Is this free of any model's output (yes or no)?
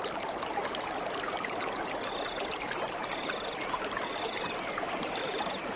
yes